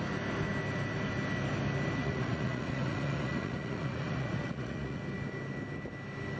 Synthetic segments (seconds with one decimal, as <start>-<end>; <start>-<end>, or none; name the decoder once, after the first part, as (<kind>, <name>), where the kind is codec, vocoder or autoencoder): 2.0-5.0 (vocoder, Vocos)